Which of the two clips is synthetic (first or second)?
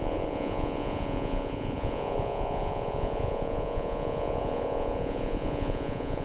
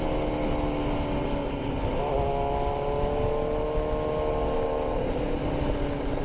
first